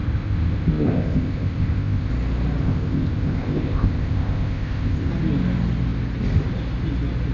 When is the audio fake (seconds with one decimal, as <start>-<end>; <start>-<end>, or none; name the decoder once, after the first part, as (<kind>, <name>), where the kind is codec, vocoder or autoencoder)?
0.0-2.1 (codec, ZipCodec); 2.6-5.1